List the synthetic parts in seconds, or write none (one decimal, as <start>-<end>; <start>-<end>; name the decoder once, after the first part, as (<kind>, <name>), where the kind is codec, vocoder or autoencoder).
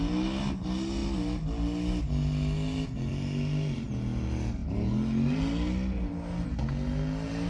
none